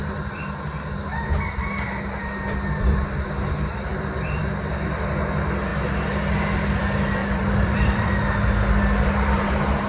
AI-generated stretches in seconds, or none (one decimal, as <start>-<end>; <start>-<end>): 7.2-9.5